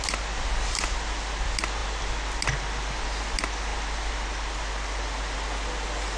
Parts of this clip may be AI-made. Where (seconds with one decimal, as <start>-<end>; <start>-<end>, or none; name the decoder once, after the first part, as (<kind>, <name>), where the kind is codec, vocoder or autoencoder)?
none